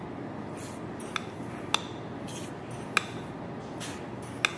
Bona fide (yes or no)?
yes